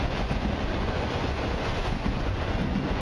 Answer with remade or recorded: remade